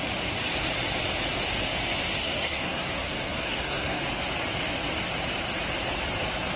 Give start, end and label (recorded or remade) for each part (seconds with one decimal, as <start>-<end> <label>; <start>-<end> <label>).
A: 0.0-2.2 recorded; 2.2-4.0 remade; 4.0-6.6 recorded